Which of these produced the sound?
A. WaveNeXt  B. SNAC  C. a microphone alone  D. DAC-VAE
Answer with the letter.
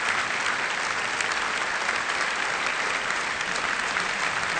C